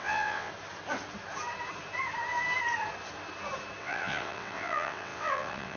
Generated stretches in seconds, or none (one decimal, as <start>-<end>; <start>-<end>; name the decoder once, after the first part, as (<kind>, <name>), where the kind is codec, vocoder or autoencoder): 0.0-0.5 (vocoder, WaveNeXt); 3.8-5.8